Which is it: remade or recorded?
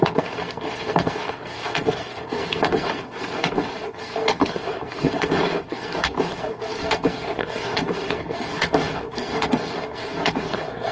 remade